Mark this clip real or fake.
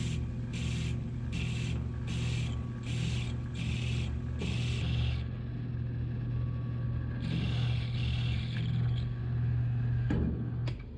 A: real